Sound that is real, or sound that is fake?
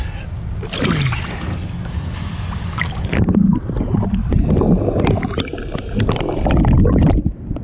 real